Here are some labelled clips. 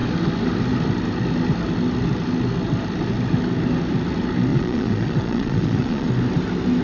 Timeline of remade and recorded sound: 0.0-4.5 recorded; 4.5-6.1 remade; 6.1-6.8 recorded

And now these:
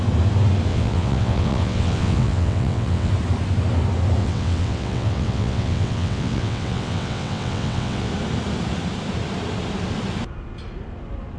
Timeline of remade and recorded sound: 0.0-0.7 recorded; 0.7-3.1 remade; 3.1-4.2 recorded; 4.2-8.1 remade; 8.1-11.4 recorded